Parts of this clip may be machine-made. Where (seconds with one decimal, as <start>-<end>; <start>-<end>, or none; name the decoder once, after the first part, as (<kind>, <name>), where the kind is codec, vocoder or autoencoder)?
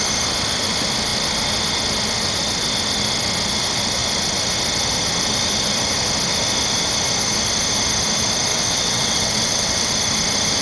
8.5-9.9 (vocoder, WaveNeXt)